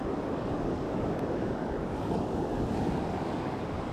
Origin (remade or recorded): remade